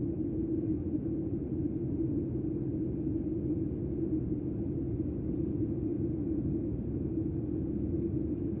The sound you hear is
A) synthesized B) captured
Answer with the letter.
B